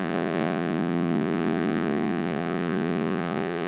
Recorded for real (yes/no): no